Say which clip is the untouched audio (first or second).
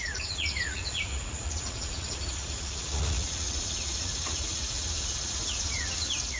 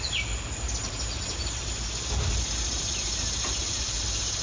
second